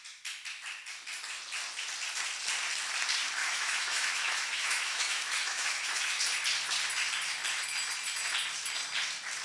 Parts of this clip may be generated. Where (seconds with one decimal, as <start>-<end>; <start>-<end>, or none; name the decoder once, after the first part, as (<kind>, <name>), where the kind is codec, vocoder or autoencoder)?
3.4-6.2 (autoencoder, DAC-VAE)

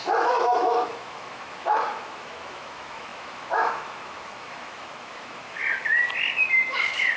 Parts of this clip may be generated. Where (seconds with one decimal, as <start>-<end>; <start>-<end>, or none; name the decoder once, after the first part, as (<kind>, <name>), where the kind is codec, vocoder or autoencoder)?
0.0-5.6 (autoencoder, DAC-VAE); 6.4-7.2

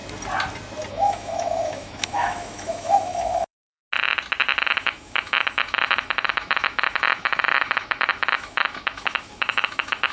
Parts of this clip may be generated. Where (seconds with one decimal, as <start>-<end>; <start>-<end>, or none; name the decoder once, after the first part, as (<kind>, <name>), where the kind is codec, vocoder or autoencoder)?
0.9-3.8 (autoencoder, DAC-VAE); 4.6-10.1